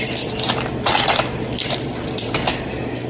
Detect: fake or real fake